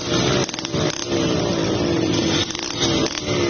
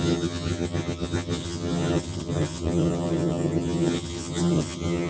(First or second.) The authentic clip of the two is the first